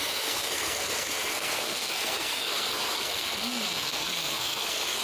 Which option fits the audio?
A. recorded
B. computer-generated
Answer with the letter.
B